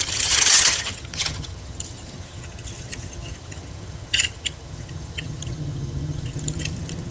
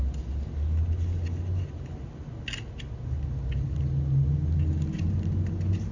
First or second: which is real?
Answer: second